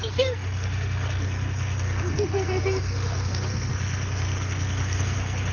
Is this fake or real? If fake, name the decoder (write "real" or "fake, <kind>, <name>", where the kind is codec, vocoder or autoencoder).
fake, codec, SNAC